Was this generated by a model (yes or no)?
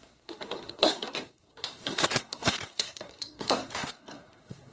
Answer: yes